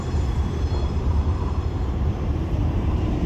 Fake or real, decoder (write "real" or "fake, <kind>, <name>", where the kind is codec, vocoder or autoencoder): fake, vocoder, BigVGAN v2